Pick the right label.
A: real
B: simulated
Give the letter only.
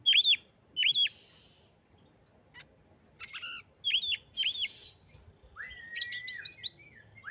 A